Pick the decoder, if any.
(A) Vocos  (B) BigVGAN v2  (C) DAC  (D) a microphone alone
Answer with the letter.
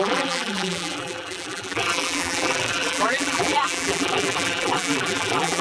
B